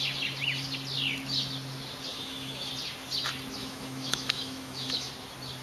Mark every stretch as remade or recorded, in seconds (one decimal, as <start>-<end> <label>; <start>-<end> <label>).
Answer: 0.0-2.1 recorded; 2.1-2.7 remade; 2.7-3.6 recorded; 3.6-5.1 remade; 5.1-5.6 recorded